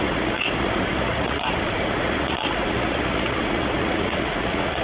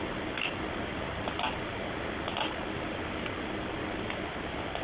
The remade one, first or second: first